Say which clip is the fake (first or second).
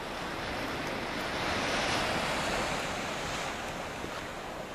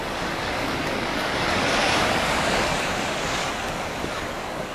second